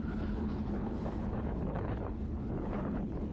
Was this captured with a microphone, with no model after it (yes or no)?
no